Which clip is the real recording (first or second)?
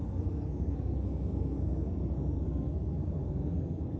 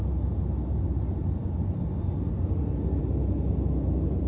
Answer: second